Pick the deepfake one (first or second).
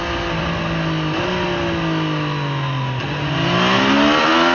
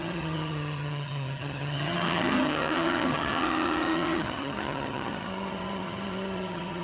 second